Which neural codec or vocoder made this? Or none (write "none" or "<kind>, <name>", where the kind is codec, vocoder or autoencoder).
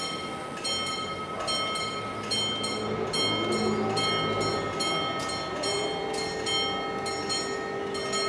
none